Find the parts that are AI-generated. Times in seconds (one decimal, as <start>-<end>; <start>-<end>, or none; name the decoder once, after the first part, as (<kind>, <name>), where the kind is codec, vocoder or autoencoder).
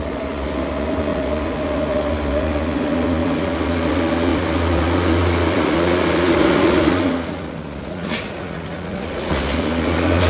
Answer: 0.0-10.3 (vocoder, Vocos)